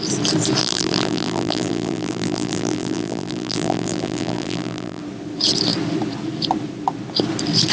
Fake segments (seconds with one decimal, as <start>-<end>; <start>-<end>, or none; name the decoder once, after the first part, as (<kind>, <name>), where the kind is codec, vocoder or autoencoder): 0.6-5.0 (vocoder, BigVGAN v2)